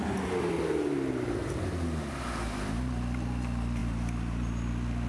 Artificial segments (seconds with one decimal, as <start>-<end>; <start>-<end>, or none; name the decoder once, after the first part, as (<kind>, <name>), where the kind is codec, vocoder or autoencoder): none